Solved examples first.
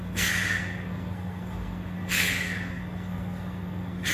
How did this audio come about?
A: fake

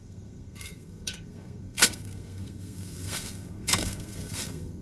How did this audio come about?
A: fake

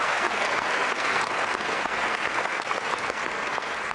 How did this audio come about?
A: fake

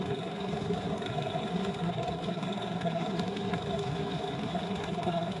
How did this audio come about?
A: fake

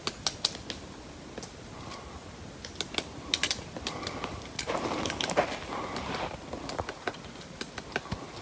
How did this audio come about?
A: real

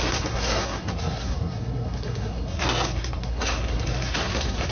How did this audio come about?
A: fake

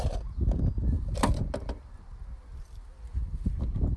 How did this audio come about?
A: real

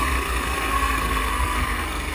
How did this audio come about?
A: fake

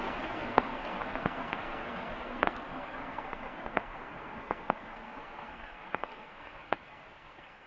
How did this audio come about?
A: fake